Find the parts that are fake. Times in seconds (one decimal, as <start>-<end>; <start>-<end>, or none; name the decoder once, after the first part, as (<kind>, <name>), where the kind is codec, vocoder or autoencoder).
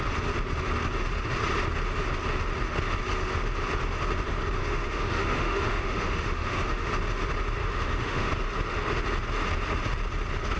4.6-6.9 (autoencoder, DAC-VAE); 7.6-8.3